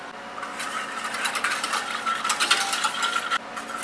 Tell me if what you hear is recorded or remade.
recorded